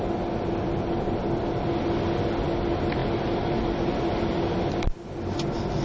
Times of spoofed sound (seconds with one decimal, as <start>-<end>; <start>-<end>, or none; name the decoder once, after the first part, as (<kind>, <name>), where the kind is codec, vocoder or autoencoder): 3.0-3.9 (vocoder, BigVGAN v2)